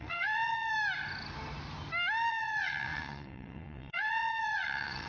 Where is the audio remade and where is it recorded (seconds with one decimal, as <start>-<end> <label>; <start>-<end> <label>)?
0.0-0.7 remade; 0.7-2.3 recorded; 2.3-5.1 remade